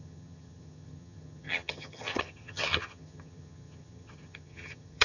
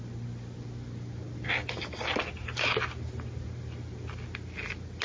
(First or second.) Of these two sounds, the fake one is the first